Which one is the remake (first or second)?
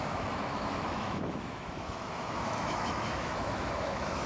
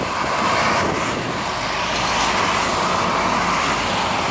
first